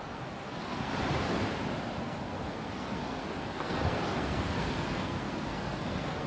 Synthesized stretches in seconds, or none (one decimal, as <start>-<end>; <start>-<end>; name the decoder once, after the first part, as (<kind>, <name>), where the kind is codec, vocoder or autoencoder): 0.0-0.9 (codec, SNAC); 2.0-6.3